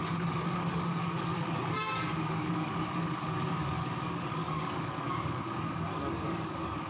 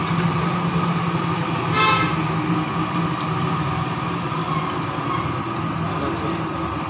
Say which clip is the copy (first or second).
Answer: first